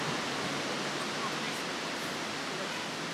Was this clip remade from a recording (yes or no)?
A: no